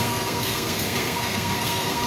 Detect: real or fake fake